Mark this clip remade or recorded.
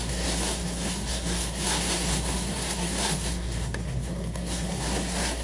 remade